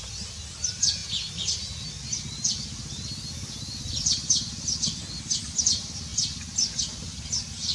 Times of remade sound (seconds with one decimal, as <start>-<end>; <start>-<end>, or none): none